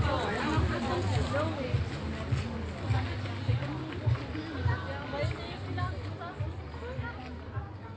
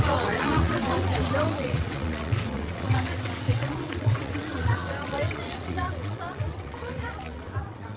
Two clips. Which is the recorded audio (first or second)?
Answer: first